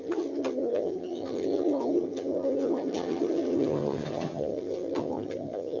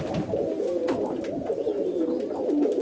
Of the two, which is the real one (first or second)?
second